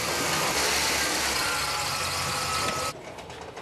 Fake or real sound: real